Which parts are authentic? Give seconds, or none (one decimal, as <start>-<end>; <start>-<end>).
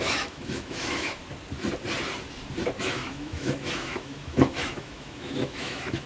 1.2-2.8